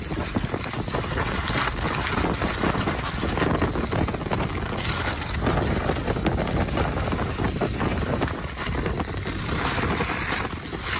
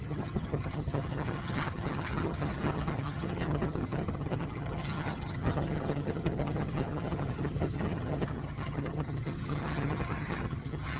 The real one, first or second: first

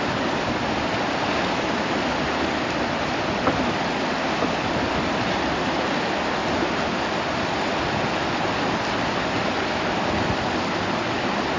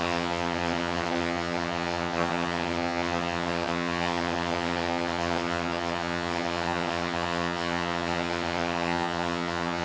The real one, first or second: first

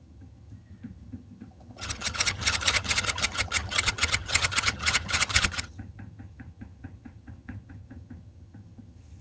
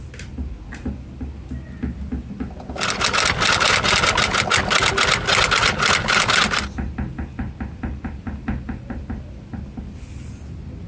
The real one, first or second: second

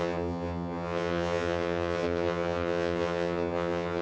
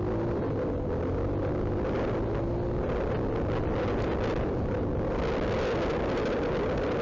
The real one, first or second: second